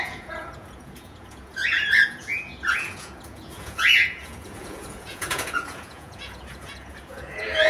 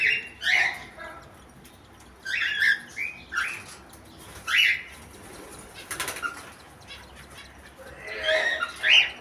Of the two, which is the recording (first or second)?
second